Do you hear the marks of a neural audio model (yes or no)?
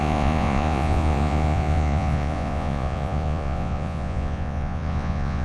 yes